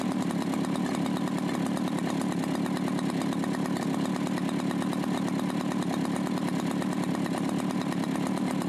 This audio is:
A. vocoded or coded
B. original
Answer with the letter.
B